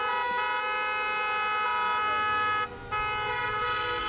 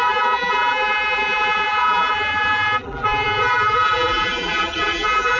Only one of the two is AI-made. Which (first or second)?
second